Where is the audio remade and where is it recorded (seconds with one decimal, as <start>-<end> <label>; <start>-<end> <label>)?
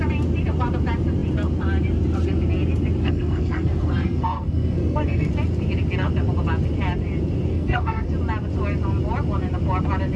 0.0-3.0 recorded; 3.0-5.3 remade; 5.3-7.5 recorded; 7.5-8.1 remade; 8.1-10.2 recorded